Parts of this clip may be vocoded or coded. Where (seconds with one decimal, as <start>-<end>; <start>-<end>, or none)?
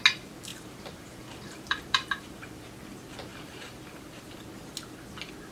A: 0.5-2.6; 3.3-4.3